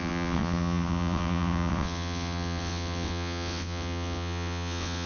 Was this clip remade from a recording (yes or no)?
yes